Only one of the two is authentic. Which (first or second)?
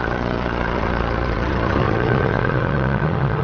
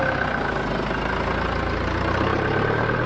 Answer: second